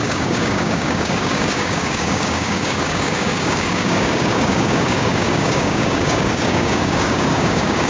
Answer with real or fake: fake